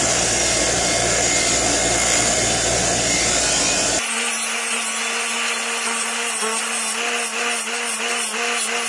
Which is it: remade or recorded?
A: recorded